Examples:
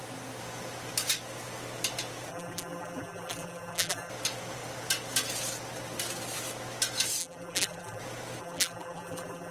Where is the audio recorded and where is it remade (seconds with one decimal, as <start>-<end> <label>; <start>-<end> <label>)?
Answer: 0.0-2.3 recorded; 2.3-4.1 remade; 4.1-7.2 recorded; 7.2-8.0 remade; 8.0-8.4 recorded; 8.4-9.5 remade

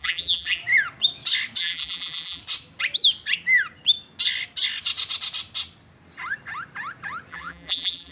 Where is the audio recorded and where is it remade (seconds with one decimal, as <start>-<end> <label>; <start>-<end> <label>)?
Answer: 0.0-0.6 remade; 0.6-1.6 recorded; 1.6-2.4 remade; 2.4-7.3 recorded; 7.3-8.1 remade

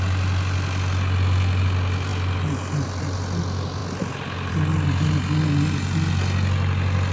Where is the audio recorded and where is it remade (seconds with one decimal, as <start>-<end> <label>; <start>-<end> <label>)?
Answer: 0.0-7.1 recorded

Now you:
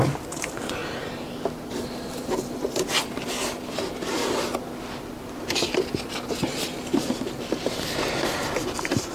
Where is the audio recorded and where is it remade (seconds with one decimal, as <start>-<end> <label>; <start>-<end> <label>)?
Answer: 0.0-0.8 remade; 0.8-2.1 recorded; 2.1-4.2 remade; 4.2-5.5 recorded; 5.5-9.1 remade

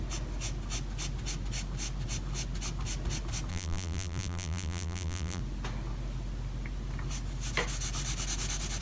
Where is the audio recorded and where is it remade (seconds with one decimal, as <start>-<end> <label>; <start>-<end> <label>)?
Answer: 0.0-3.5 recorded; 3.5-5.4 remade; 5.4-8.8 recorded

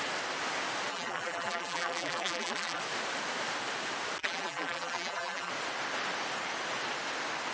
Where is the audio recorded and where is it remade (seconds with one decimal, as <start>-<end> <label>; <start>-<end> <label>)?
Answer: 0.0-0.9 recorded; 0.9-2.8 remade; 2.8-4.2 recorded; 4.2-5.5 remade; 5.5-7.5 recorded

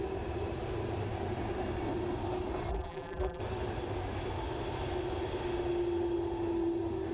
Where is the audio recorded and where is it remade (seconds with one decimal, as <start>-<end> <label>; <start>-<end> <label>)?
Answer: 0.0-2.7 recorded; 2.7-3.4 remade; 3.4-7.1 recorded